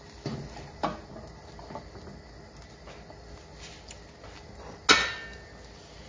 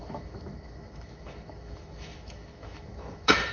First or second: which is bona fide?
first